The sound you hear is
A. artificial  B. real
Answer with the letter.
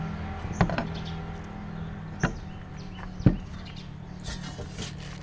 B